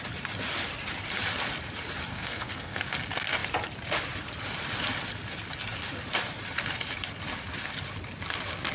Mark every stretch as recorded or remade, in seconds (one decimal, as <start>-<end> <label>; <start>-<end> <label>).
0.0-2.1 recorded; 2.1-2.8 remade; 2.8-8.7 recorded